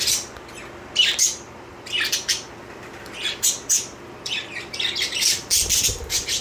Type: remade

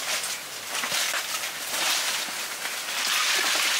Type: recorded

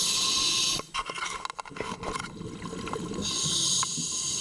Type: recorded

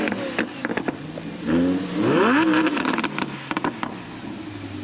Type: recorded